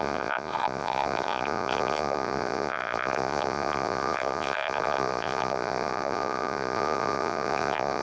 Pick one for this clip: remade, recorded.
remade